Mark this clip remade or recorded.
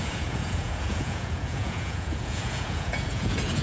remade